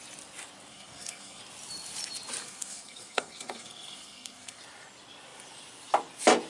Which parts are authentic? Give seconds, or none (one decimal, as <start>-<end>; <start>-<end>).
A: 0.0-0.7; 1.4-2.4; 4.6-6.5